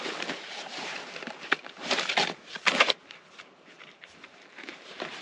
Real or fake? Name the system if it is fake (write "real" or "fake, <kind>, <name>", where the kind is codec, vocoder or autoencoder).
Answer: fake, vocoder, BigVGAN v2